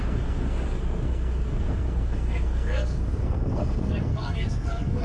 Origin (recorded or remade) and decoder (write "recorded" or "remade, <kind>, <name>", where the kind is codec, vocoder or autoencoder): remade, codec, SNAC